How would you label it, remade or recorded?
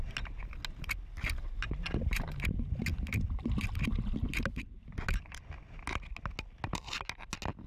recorded